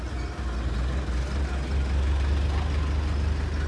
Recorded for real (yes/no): yes